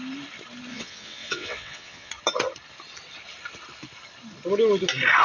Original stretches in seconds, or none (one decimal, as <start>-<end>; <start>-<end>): 0.0-0.7; 2.1-5.2